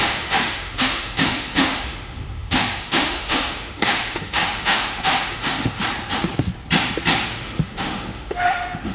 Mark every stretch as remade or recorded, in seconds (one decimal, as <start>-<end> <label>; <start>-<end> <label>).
0.0-5.8 remade; 5.8-7.3 recorded; 7.3-8.9 remade